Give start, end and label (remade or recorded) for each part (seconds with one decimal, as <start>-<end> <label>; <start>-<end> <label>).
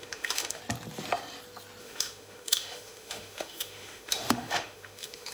0.0-0.6 remade; 0.6-1.8 recorded; 1.8-5.3 remade